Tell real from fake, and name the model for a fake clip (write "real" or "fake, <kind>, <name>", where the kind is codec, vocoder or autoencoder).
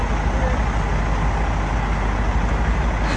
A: real